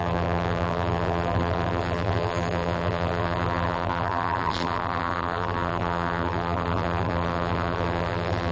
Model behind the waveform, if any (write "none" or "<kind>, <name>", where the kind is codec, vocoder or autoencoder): vocoder, BigVGAN v2